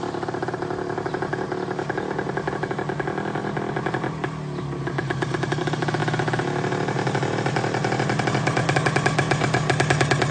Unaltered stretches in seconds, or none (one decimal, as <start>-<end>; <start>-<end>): 0.0-10.3